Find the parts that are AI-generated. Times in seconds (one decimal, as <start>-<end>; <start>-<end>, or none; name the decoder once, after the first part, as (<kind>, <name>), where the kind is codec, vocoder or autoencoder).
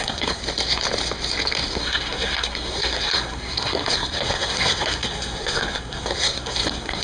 0.0-0.4 (codec, SNAC); 1.7-7.0